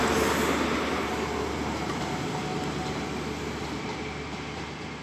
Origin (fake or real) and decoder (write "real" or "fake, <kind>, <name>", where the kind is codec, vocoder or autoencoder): real